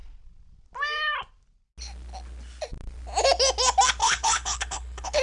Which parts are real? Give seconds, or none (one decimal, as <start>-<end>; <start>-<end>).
0.0-4.0